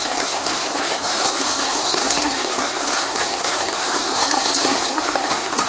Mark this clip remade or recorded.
remade